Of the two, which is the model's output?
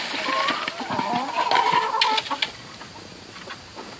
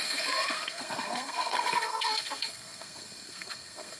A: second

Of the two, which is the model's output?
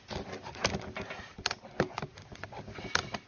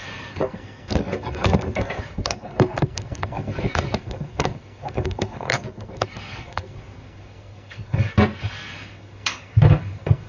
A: second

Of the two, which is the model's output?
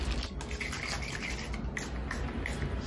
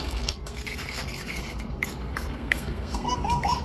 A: second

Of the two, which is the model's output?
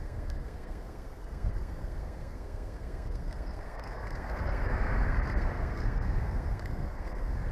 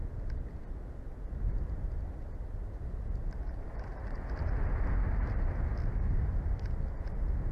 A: first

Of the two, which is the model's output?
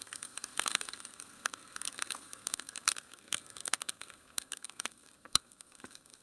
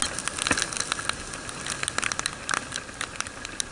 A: first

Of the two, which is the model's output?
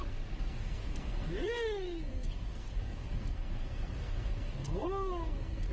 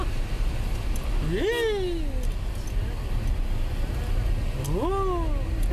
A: first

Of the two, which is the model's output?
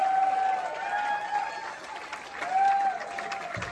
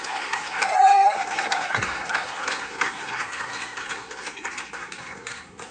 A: second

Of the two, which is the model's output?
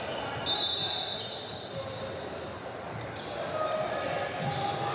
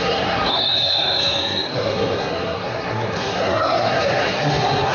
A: second